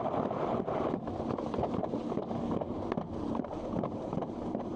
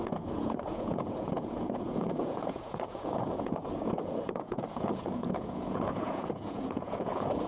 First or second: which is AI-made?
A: second